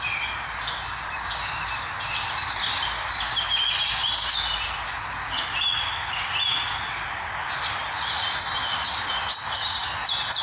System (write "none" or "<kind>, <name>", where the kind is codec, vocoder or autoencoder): none